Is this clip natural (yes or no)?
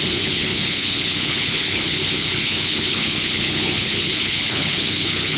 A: no